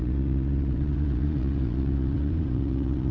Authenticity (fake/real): fake